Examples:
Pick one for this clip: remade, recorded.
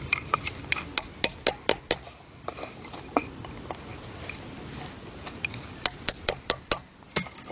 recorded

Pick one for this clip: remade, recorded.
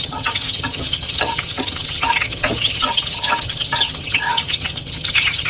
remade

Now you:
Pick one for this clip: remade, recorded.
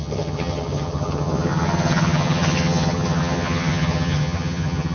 remade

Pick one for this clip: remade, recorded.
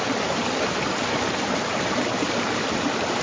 recorded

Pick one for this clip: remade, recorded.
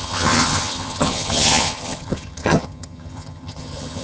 remade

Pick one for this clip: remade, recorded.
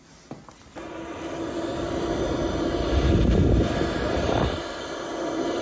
recorded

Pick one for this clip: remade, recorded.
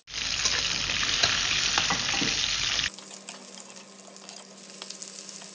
recorded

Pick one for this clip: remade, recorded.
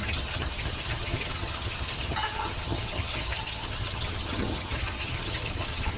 remade